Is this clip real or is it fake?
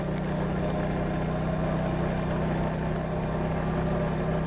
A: real